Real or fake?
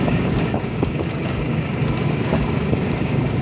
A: fake